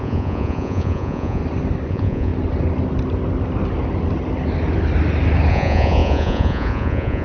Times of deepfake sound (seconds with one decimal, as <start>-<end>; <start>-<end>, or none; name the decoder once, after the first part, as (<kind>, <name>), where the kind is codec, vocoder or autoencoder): 0.0-1.4 (vocoder, Vocos); 1.9-2.3; 5.5-7.2

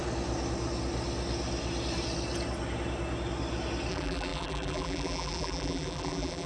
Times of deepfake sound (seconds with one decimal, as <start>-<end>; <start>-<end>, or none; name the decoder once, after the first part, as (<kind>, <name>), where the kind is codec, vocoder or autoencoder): 3.9-6.5 (vocoder, BigVGAN v2)

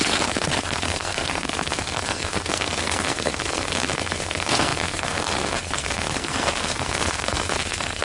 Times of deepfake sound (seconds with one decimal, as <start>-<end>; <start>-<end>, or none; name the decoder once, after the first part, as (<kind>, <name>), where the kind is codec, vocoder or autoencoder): 0.0-8.0 (codec, SNAC)

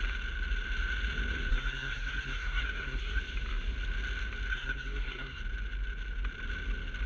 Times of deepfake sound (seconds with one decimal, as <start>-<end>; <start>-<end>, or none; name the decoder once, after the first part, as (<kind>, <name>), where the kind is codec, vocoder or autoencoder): 1.5-3.2 (codec, SNAC); 4.5-5.4